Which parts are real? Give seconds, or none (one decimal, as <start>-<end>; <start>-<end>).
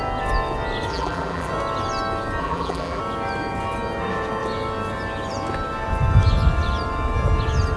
0.0-0.9; 1.5-2.4; 3.0-7.8